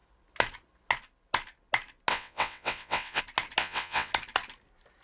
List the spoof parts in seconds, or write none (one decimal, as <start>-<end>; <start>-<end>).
2.1-3.2; 3.6-4.1